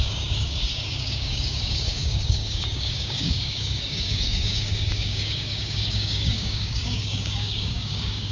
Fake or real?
fake